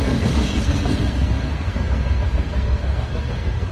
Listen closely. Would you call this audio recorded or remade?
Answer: remade